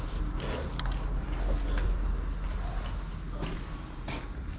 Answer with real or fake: real